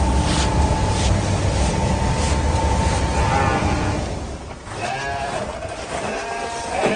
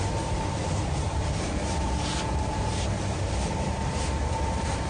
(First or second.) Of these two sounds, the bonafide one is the first